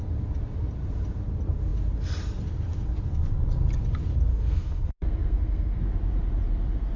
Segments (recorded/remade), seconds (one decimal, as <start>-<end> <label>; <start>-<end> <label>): 0.0-4.3 recorded; 4.3-5.8 remade; 5.8-7.0 recorded